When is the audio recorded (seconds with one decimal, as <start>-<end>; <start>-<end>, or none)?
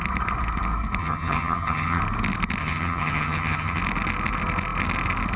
0.0-1.0; 2.0-2.6; 3.8-5.4